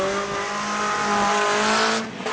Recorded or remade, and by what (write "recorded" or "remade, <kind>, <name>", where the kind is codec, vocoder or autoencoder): recorded